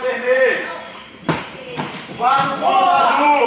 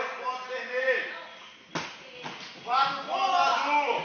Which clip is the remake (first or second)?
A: first